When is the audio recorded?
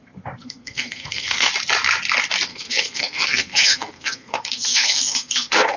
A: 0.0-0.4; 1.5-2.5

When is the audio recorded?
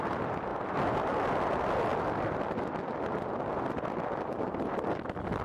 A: 0.0-5.4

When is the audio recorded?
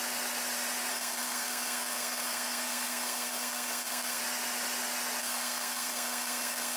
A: 0.0-0.9; 4.2-5.2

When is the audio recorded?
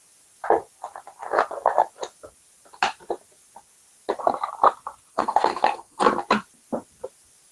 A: 0.0-5.1; 6.0-7.5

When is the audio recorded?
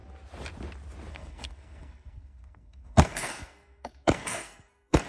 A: 0.0-1.1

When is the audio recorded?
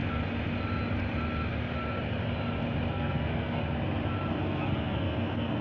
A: 0.0-2.9; 3.6-4.3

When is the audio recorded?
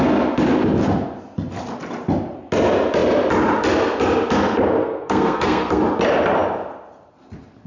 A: 0.0-4.8; 5.8-7.7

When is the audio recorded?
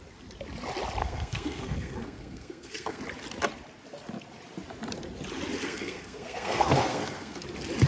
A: 0.0-1.0; 3.0-5.6; 7.4-7.9